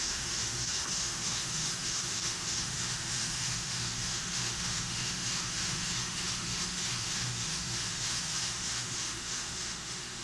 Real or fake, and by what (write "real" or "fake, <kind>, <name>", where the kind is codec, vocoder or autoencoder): fake, autoencoder, DAC-VAE